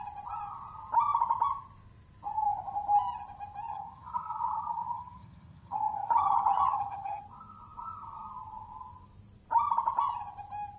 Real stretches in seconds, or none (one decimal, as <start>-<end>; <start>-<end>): 0.0-3.7; 7.2-10.8